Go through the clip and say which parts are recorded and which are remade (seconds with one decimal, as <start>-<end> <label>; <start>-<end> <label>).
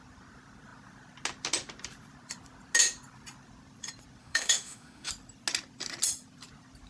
0.0-4.2 recorded; 4.2-5.1 remade; 5.1-6.9 recorded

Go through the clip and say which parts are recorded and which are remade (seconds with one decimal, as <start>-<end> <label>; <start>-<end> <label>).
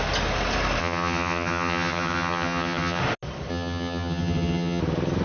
0.0-0.8 recorded; 0.8-3.0 remade; 3.0-3.5 recorded; 3.5-4.8 remade; 4.8-5.2 recorded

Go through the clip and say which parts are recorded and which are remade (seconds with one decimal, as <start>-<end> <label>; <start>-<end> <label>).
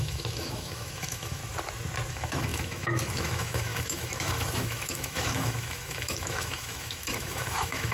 0.0-1.4 remade; 1.4-2.1 recorded; 2.1-7.9 remade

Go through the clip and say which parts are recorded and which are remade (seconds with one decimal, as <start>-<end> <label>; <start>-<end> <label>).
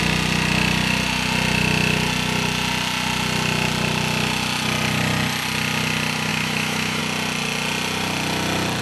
0.0-6.3 recorded; 6.3-7.0 remade; 7.0-8.8 recorded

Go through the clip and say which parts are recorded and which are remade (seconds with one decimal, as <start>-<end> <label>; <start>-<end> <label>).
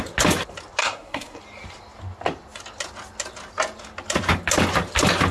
0.0-0.8 recorded; 0.8-1.4 remade; 1.4-5.3 recorded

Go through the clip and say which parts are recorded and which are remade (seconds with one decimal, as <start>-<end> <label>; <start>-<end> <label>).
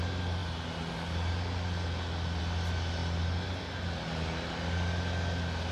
0.0-5.7 recorded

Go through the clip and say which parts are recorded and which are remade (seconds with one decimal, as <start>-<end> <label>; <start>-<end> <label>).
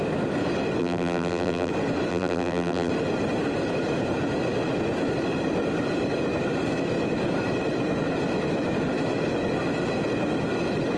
0.0-0.8 recorded; 0.8-1.7 remade; 1.7-2.1 recorded; 2.1-2.9 remade; 2.9-11.0 recorded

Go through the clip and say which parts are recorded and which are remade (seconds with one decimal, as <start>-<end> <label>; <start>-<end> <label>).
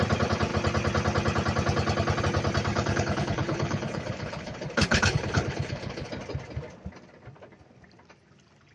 0.0-2.7 recorded; 2.7-6.1 remade; 6.1-8.7 recorded